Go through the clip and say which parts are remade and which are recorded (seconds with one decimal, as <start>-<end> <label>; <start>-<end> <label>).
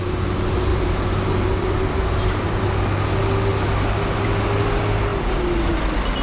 0.0-0.7 recorded; 0.7-2.6 remade; 2.6-6.2 recorded